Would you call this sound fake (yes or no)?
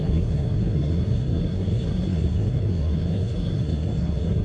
yes